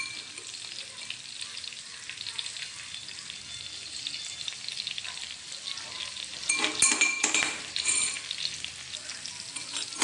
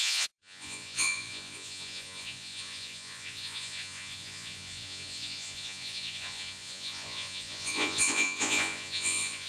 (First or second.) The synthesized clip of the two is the second